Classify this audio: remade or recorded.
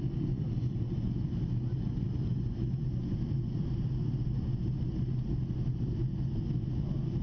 recorded